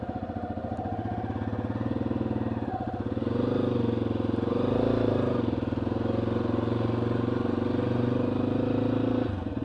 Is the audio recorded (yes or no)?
yes